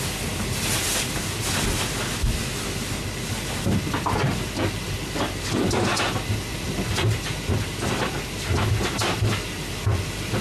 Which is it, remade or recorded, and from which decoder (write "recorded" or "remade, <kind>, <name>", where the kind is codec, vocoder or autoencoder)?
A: recorded